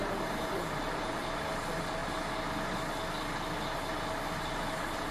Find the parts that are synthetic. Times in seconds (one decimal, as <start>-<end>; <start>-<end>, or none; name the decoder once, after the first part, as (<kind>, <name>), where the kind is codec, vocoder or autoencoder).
0.0-2.0 (vocoder, BigVGAN v2); 4.4-5.1